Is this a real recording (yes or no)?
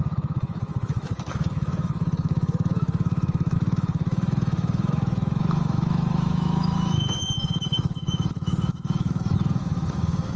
no